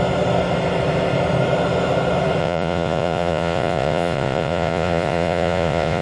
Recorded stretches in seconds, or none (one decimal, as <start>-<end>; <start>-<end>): 0.0-2.4